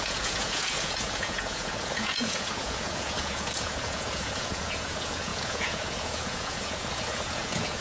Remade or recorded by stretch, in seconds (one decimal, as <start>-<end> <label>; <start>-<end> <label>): 0.0-7.8 remade

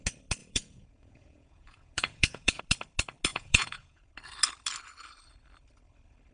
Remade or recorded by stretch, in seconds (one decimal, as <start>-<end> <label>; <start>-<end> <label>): 0.0-0.4 recorded; 0.4-2.6 remade; 2.6-3.3 recorded; 3.3-4.1 remade; 4.1-6.3 recorded

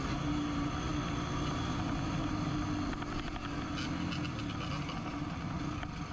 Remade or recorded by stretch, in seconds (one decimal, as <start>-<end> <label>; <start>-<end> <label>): 0.0-6.1 recorded

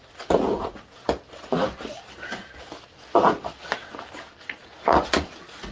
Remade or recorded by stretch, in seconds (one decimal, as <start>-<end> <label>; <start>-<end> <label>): 0.0-1.0 remade; 1.0-4.4 recorded; 4.4-5.7 remade

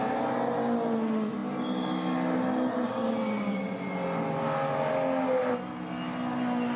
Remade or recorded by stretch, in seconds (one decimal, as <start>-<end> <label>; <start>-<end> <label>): 0.0-6.8 recorded

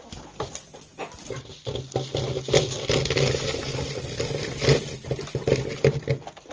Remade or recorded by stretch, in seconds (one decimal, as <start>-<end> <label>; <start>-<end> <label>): 0.0-6.5 recorded